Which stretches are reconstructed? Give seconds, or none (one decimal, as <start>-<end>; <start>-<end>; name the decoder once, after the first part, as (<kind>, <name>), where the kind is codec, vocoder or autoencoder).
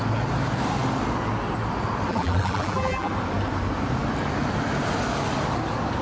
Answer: 2.1-3.1 (vocoder, BigVGAN v2)